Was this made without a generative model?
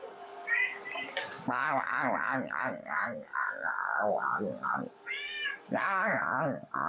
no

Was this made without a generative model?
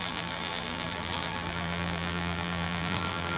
no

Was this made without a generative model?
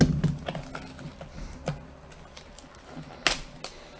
yes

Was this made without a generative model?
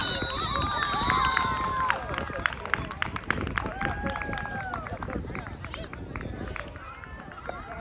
yes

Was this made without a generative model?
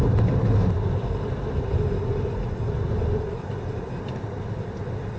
yes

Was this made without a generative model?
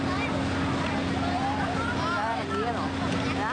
yes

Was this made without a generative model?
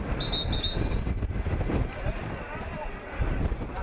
yes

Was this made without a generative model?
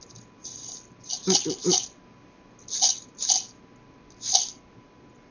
yes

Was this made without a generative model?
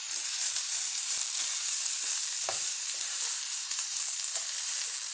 no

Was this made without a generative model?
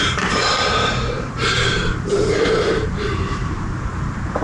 no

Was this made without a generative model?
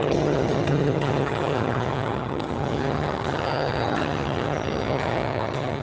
no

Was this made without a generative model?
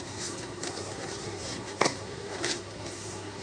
no